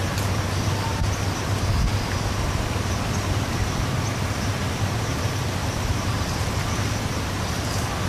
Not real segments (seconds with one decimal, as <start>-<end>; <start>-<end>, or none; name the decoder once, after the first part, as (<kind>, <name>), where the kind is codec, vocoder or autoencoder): 5.6-6.5 (vocoder, BigVGAN v2)